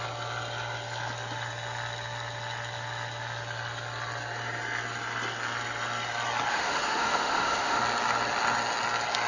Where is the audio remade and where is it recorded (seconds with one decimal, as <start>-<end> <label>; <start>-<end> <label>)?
0.0-6.5 recorded; 6.5-7.8 remade; 7.8-9.3 recorded

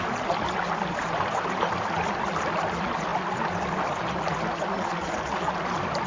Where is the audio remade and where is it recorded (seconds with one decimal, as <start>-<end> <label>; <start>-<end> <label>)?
0.0-6.1 recorded

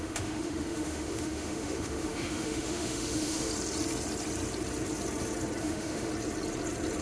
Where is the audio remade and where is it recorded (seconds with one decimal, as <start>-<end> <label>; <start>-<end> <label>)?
0.0-3.5 remade; 3.5-5.6 recorded; 5.6-6.1 remade; 6.1-7.0 recorded

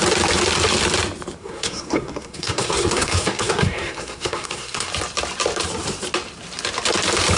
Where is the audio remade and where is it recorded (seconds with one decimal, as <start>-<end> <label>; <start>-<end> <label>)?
0.0-1.4 recorded; 1.4-4.9 remade; 4.9-7.4 recorded

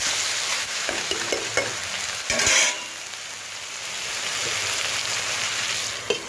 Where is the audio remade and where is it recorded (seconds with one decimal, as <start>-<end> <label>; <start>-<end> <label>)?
0.0-0.5 recorded; 0.5-1.3 remade; 1.3-6.3 recorded

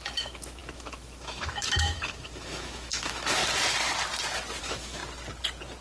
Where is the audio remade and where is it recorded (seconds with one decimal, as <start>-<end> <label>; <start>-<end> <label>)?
0.0-3.4 remade; 3.4-4.6 recorded; 4.6-5.0 remade; 5.0-5.8 recorded